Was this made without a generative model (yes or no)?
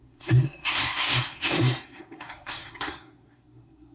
no